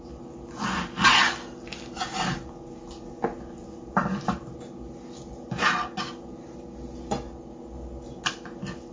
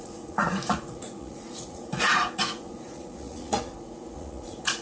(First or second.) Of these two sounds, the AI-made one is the second